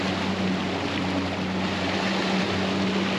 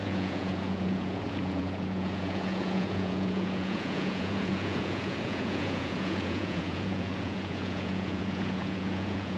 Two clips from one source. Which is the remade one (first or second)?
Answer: second